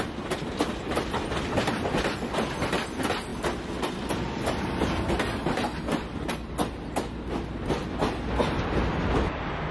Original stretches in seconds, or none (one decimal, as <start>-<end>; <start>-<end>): 0.0-9.7